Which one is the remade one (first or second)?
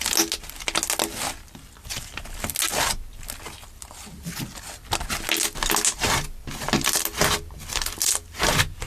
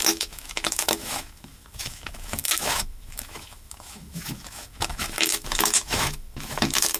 second